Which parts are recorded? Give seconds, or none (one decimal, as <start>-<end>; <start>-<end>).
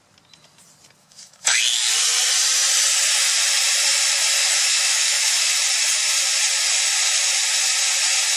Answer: 0.0-1.0; 1.6-4.4; 5.5-8.4